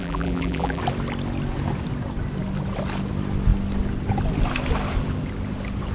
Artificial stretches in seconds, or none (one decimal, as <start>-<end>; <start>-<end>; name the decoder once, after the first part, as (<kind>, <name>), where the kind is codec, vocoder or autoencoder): 0.0-0.8 (vocoder, BigVGAN v2)